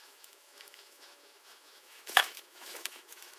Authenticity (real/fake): fake